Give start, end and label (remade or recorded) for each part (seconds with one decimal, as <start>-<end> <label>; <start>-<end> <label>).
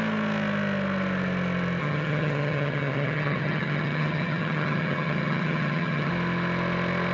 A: 0.0-1.8 recorded; 1.8-6.1 remade; 6.1-7.1 recorded